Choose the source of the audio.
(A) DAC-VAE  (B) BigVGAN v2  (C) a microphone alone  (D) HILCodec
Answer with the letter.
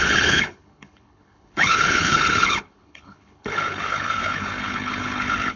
D